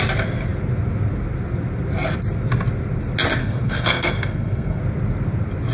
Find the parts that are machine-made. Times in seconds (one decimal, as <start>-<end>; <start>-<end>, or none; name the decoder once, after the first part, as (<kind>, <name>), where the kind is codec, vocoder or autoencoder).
3.4-4.8 (codec, SNAC)